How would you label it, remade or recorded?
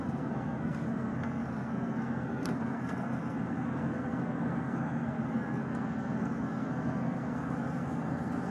remade